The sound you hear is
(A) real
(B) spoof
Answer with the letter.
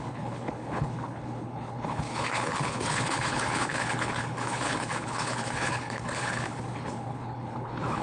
B